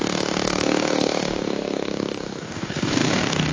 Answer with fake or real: fake